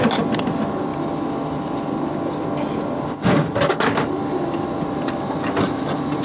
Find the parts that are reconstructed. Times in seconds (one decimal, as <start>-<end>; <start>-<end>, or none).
none